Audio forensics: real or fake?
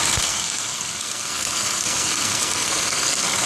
fake